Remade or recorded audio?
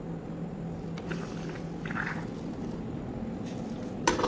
recorded